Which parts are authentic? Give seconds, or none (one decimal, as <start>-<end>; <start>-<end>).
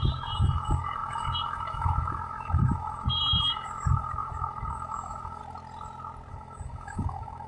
5.4-6.3